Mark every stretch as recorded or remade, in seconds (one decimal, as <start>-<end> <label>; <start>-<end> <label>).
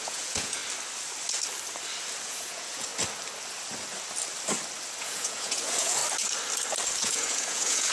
0.0-0.6 remade; 0.6-2.2 recorded; 2.2-2.9 remade; 2.9-5.0 recorded; 5.0-6.0 remade; 6.0-7.0 recorded; 7.0-7.9 remade